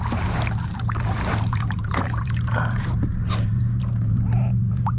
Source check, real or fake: fake